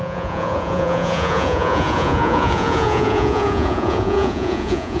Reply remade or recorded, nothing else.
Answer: remade